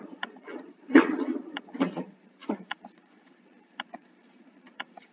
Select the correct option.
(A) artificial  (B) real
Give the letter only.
A